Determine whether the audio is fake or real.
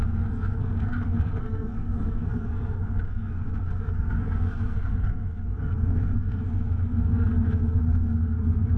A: fake